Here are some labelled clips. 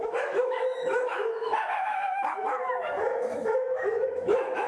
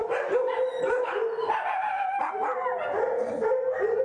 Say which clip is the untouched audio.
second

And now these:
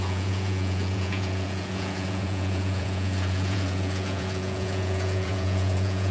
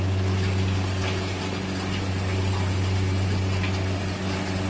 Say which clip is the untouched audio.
second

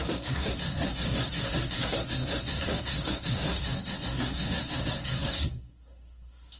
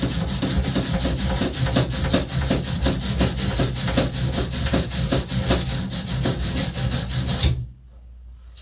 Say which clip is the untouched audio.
second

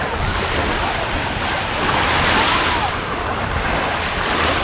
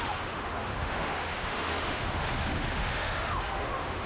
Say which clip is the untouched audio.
first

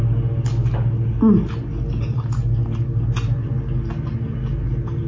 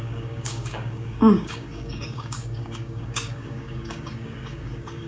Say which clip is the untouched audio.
first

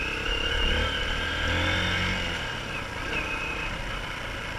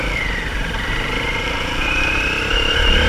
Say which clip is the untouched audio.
first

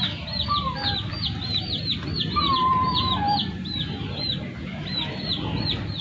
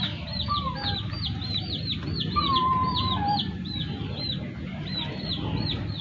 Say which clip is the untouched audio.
first